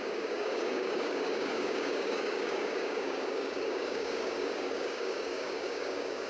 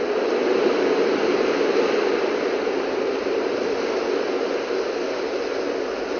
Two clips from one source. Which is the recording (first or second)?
second